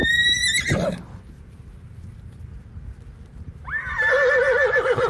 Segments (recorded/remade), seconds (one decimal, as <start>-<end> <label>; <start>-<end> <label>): 0.0-2.5 remade; 2.5-5.1 recorded